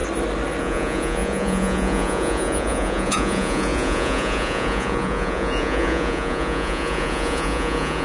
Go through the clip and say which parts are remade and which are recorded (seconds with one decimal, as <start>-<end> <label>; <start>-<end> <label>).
0.0-0.6 recorded; 0.6-8.0 remade